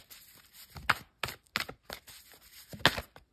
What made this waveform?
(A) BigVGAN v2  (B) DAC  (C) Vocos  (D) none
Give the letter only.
D